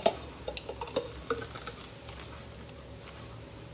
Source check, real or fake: real